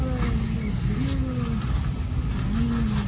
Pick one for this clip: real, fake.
real